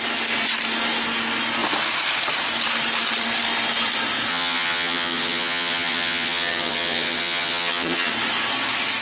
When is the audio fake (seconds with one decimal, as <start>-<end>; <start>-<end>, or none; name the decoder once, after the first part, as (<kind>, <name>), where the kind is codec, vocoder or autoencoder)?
4.3-8.1 (vocoder, HiFi-GAN)